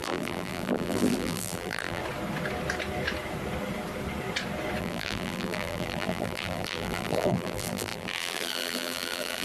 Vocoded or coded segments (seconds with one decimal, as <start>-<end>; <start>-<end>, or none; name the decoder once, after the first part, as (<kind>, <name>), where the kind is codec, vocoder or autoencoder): 0.0-2.0 (vocoder, BigVGAN v2); 4.8-9.4